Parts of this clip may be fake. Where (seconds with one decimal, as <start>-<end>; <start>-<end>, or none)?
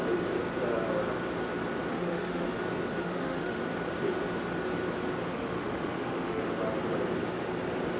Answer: 1.9-2.6; 3.0-3.6; 5.3-6.4